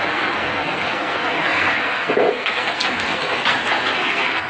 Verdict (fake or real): fake